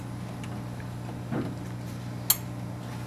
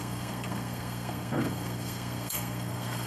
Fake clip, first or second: second